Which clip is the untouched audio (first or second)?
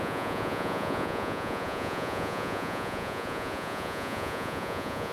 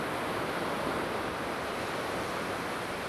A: second